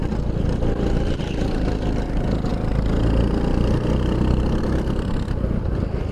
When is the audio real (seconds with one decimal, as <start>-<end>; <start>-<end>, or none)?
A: 0.0-6.1